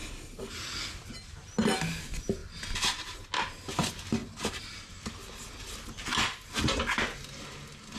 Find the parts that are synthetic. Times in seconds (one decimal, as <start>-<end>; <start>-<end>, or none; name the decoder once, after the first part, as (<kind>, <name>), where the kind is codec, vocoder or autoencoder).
0.0-0.5 (codec, DAC)